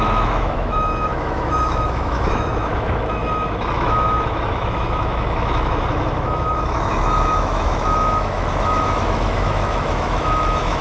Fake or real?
fake